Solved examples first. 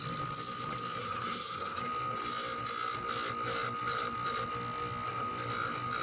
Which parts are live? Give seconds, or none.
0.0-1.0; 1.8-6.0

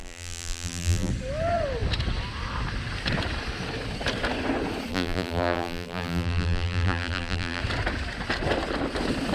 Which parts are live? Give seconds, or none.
1.1-4.9; 7.6-9.3